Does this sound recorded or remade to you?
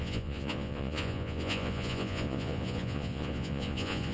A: remade